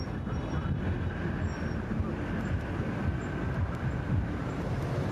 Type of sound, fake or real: real